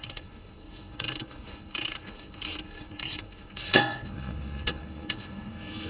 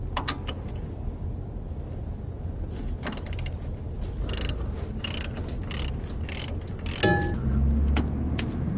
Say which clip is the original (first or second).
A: second